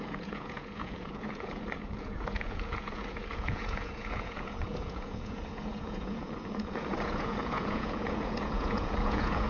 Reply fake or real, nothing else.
fake